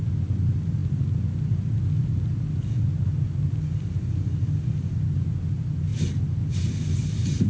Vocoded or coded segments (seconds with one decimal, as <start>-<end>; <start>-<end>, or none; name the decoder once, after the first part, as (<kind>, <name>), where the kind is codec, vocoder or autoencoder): none